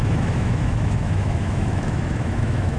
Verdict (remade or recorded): remade